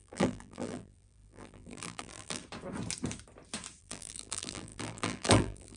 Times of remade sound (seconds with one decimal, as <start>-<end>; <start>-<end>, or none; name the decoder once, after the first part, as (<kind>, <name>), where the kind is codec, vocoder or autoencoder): 0.0-2.4 (vocoder, BigVGAN v2); 3.8-5.8